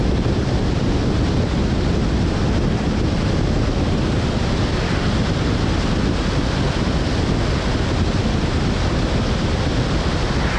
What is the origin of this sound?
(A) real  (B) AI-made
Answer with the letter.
A